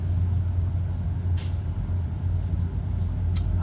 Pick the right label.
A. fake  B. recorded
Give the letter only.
B